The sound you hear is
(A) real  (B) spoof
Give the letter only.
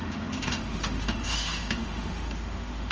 B